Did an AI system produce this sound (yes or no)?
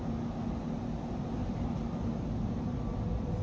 no